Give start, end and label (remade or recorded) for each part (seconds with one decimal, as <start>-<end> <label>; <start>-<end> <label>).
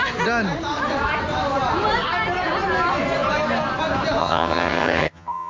0.0-4.2 recorded; 4.2-5.5 remade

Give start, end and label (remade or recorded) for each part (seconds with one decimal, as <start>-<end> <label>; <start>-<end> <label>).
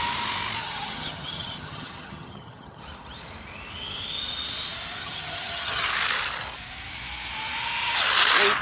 0.0-0.6 recorded; 0.6-2.8 remade; 2.8-5.0 recorded; 5.0-5.9 remade; 5.9-8.6 recorded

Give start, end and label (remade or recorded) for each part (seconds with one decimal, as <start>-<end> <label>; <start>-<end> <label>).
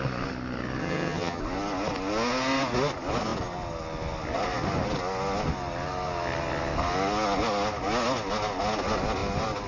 0.0-0.8 recorded; 0.8-1.4 remade; 1.4-9.7 recorded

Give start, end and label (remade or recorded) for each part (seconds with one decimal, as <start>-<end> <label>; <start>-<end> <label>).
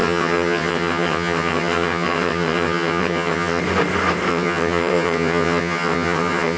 0.0-3.6 remade; 3.6-4.3 recorded; 4.3-6.6 remade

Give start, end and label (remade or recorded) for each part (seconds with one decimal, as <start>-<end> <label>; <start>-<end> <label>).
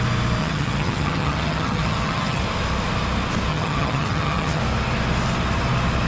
0.0-0.4 recorded; 0.4-2.4 remade; 2.4-3.5 recorded; 3.5-4.6 remade; 4.6-6.1 recorded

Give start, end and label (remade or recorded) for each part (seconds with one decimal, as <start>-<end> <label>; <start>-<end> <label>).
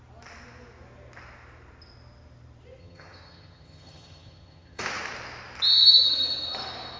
0.0-2.8 recorded; 2.8-4.8 remade; 4.8-7.0 recorded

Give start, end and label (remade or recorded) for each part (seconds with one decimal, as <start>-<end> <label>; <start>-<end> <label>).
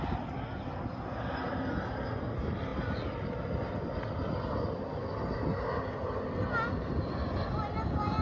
0.0-8.2 recorded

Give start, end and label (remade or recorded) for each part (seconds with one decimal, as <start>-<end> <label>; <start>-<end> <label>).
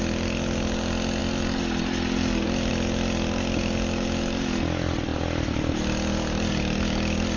0.0-7.4 recorded